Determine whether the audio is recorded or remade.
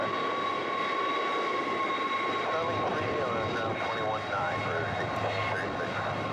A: recorded